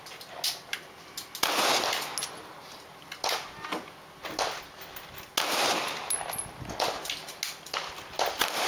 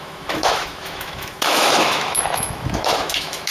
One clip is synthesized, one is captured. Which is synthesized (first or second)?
second